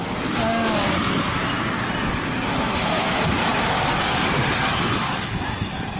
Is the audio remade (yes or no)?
no